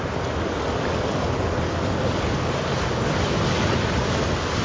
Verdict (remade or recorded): recorded